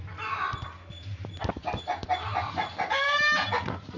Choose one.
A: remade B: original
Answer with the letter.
B